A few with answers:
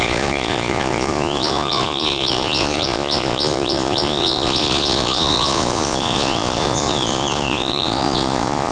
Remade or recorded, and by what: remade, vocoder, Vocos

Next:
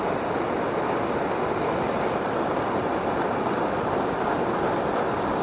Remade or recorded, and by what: recorded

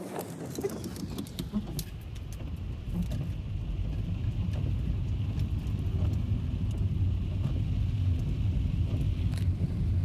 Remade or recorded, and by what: recorded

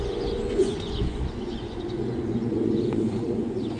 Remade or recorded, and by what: remade, vocoder, Vocos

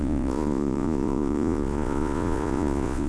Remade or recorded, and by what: remade, vocoder, Vocos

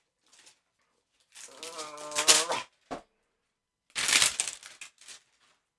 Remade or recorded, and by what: recorded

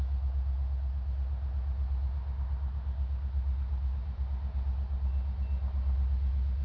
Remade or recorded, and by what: recorded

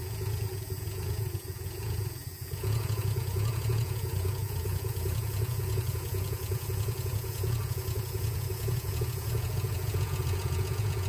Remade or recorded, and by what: remade, vocoder, Vocos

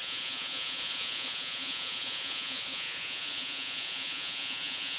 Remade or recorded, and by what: remade, vocoder, Vocos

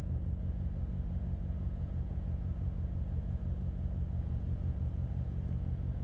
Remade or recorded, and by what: remade, vocoder, Vocos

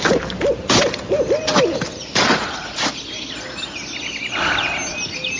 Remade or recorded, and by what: recorded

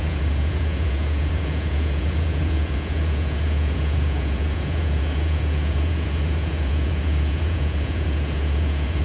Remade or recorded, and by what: remade, vocoder, Vocos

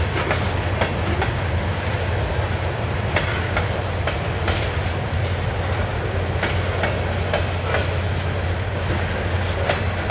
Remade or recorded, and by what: recorded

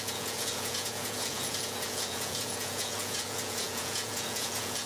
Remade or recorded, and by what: remade, vocoder, Vocos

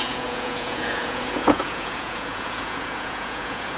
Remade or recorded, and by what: remade, vocoder, Vocos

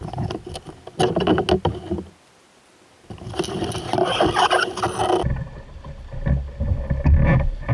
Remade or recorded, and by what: recorded